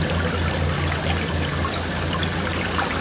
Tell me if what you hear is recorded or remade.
recorded